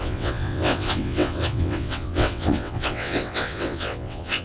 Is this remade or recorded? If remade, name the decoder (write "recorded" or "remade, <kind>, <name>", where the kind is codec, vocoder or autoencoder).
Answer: remade, vocoder, WaveNeXt